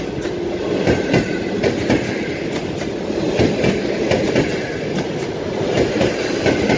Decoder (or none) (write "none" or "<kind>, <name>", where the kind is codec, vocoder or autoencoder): none